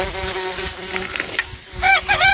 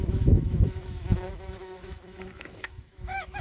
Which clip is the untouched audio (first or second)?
first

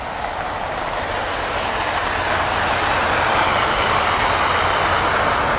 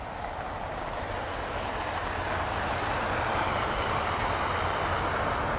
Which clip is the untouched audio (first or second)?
first